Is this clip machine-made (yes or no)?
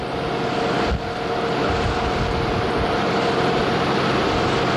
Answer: yes